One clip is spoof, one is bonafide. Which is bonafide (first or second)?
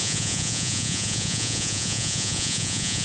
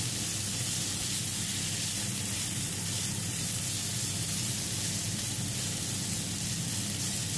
second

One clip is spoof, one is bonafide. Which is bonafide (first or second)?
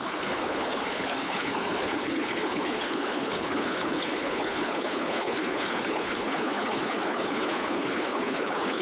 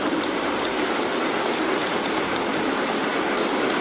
second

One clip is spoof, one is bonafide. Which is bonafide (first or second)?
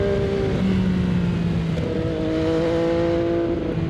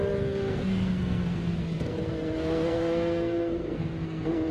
first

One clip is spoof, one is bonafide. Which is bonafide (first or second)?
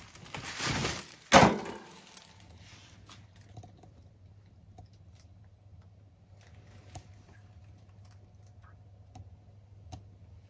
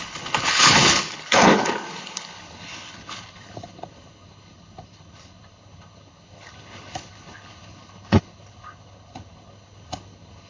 first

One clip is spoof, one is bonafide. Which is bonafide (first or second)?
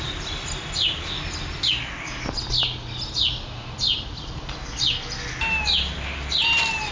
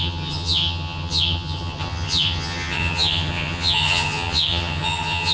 first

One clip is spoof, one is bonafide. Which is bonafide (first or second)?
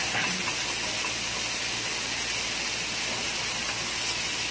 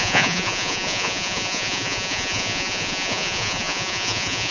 first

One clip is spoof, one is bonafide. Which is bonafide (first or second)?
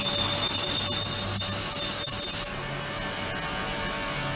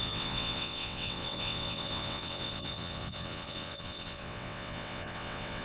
first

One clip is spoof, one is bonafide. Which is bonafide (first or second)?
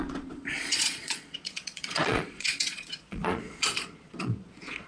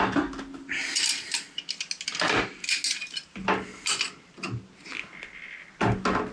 second